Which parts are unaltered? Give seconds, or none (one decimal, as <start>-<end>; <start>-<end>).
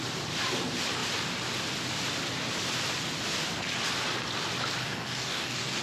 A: 0.0-4.8